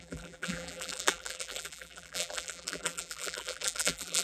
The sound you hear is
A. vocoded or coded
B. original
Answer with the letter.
A